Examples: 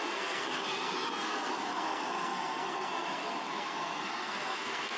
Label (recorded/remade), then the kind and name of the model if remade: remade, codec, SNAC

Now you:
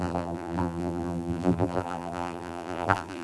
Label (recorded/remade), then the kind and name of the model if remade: remade, vocoder, BigVGAN v2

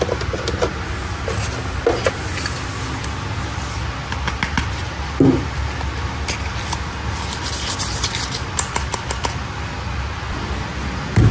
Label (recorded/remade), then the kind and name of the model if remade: recorded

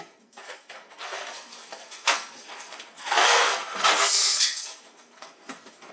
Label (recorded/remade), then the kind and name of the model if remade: remade, codec, SNAC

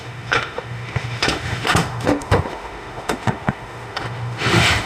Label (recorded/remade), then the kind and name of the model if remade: remade, autoencoder, DAC-VAE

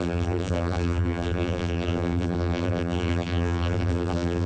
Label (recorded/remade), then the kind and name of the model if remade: remade, vocoder, BigVGAN v2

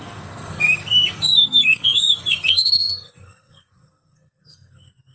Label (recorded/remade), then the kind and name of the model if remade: remade, codec, SNAC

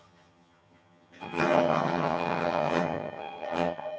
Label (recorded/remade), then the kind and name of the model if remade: remade, vocoder, HiFi-GAN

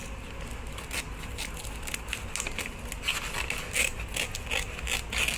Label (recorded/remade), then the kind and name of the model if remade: recorded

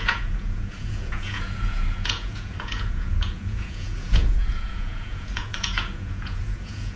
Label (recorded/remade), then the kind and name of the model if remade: remade, vocoder, Vocos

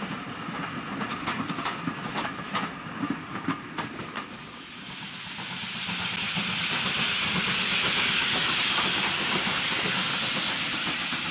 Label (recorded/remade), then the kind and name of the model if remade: recorded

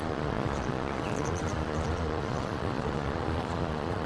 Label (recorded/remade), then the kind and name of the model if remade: remade, vocoder, Vocos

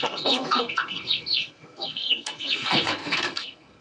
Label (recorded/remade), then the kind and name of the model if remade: remade, codec, SNAC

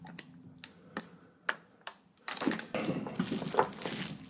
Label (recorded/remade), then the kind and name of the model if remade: recorded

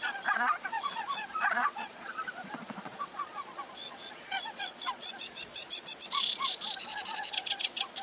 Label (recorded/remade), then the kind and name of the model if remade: remade, vocoder, Vocos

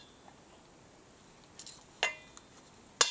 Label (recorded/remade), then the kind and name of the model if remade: recorded